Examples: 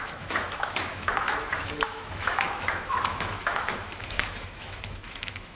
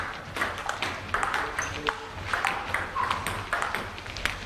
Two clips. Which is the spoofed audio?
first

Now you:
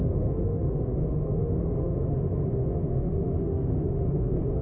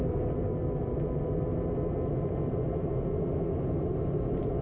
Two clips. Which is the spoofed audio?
first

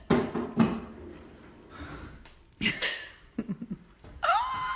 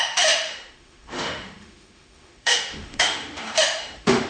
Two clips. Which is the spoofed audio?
second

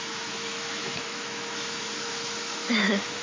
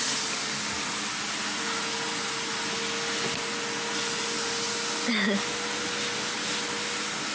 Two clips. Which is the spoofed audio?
first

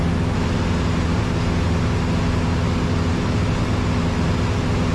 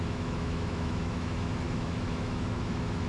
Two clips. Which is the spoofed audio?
second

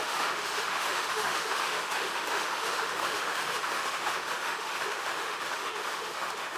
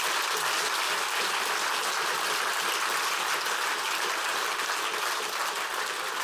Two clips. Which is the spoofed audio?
first